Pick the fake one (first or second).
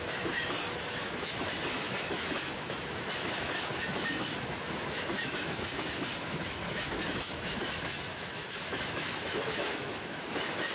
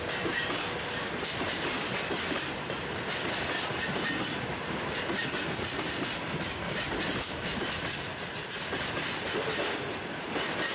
first